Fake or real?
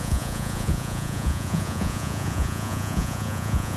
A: fake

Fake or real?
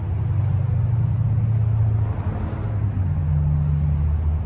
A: real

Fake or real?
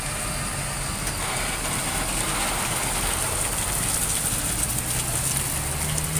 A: real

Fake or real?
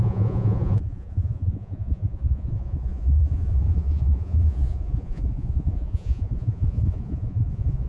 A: fake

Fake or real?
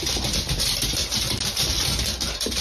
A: real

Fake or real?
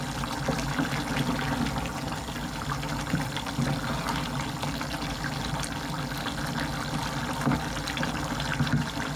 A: real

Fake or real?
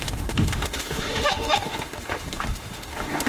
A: fake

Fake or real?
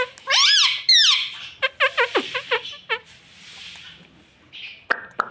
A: real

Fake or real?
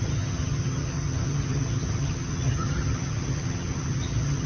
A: fake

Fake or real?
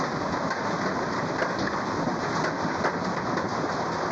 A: real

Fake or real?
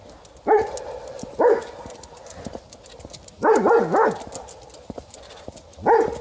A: real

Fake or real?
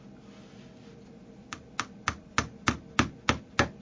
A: real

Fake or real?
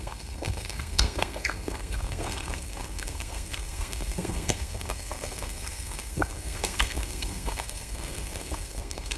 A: fake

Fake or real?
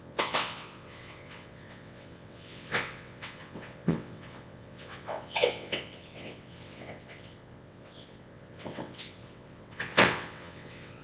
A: fake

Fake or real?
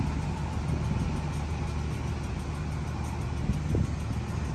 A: real